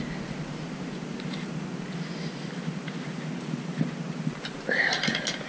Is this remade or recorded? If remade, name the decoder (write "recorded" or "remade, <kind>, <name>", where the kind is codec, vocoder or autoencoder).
recorded